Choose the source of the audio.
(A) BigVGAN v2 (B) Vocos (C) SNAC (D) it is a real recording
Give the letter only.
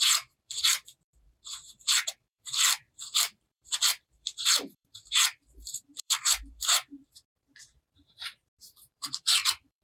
A